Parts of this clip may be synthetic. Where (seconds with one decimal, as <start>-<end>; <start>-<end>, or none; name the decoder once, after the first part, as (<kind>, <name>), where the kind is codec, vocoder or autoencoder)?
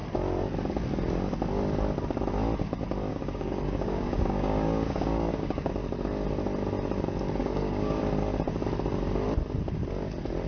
3.1-5.7 (codec, DAC); 7.4-8.0